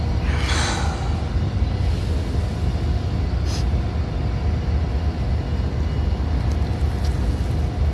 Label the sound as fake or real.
real